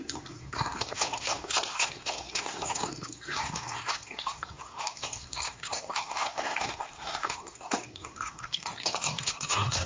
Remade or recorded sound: remade